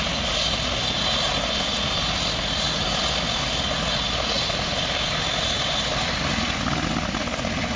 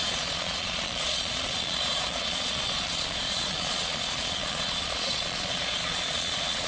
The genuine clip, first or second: first